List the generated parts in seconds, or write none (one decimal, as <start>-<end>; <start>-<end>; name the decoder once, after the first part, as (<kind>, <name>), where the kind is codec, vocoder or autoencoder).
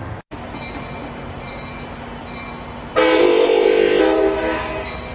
3.2-4.0 (codec, ZipCodec)